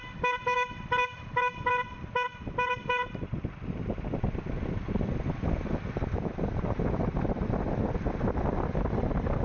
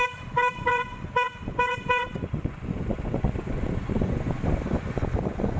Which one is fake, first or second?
second